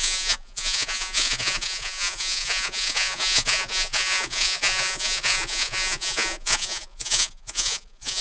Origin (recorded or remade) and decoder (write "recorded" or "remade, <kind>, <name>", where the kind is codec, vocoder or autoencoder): remade, vocoder, Vocos